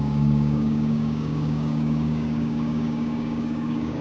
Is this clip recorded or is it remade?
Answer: remade